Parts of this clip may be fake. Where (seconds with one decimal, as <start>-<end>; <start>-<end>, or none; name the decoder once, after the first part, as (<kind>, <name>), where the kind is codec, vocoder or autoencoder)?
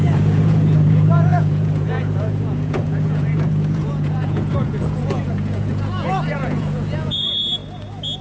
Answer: 0.0-7.6 (vocoder, Vocos)